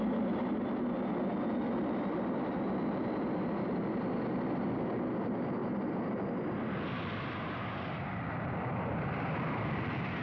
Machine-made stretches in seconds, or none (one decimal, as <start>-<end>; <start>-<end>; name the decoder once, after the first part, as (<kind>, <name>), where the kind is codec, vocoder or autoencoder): none